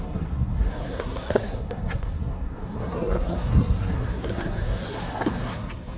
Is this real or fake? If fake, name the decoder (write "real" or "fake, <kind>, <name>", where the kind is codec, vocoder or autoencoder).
fake, codec, SNAC